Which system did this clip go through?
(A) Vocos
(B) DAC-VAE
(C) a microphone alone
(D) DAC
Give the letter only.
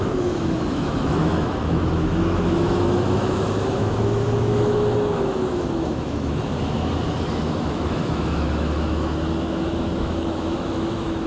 B